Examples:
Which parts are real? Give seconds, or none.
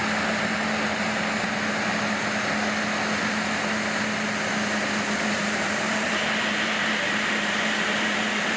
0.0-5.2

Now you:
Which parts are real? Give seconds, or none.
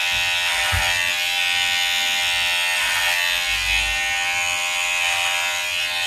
0.0-6.1